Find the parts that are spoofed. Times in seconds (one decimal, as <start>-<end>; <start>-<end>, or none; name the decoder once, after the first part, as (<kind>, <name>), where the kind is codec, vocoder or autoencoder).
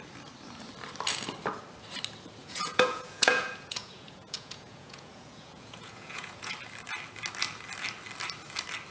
2.4-6.5 (vocoder, Vocos)